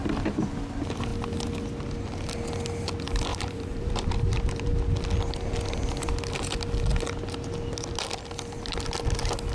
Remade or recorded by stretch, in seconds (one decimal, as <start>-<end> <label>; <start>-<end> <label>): 0.0-3.3 recorded; 3.3-4.8 remade; 4.8-9.5 recorded